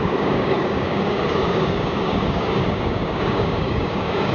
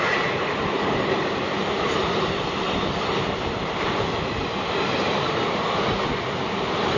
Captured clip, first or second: second